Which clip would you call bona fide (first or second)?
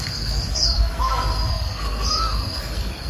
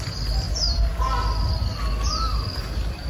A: second